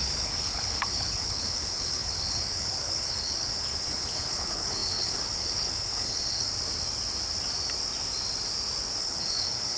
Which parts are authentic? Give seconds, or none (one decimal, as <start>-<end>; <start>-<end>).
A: 6.5-9.0